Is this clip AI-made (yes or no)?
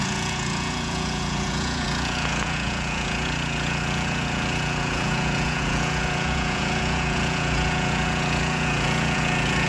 yes